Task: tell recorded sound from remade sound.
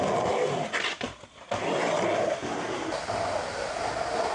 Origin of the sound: recorded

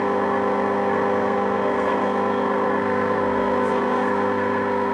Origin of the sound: remade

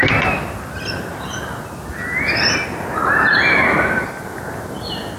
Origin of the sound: recorded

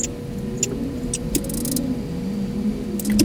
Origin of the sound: recorded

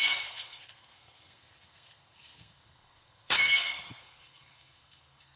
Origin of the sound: remade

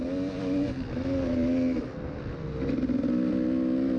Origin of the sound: recorded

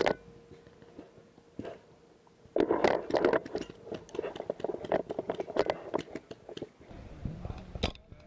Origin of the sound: recorded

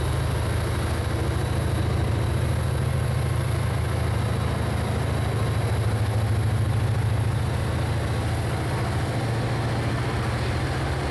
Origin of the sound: recorded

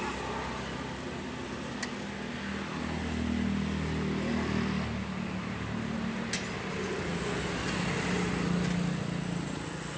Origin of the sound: recorded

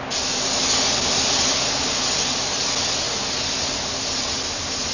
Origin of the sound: recorded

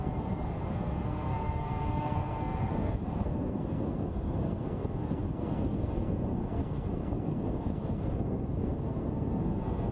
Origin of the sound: remade